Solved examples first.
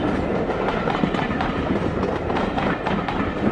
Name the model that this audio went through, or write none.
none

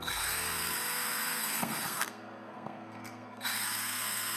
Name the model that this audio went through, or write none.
codec, SNAC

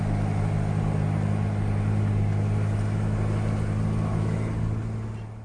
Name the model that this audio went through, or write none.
none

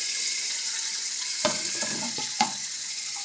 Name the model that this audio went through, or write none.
vocoder, Vocos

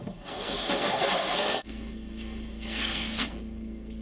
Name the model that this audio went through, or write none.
codec, SNAC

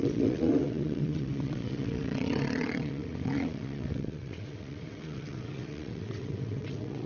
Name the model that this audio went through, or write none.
vocoder, WaveNeXt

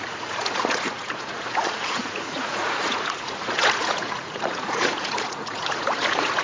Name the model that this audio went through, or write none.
vocoder, Vocos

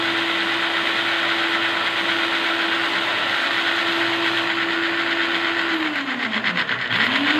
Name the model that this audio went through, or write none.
none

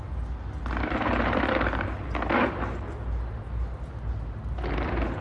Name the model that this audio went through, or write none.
none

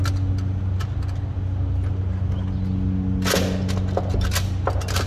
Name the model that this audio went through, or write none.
none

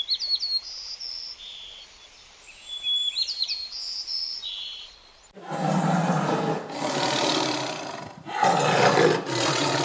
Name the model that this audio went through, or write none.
none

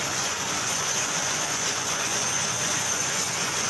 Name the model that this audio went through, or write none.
vocoder, Vocos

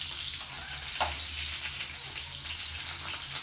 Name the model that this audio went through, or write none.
none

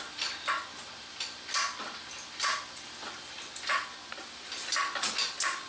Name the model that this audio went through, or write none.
none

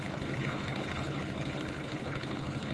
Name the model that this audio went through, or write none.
codec, HILCodec